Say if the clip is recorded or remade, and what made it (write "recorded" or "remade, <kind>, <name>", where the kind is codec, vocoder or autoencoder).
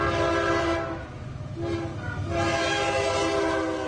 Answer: recorded